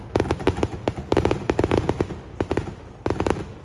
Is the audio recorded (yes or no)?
yes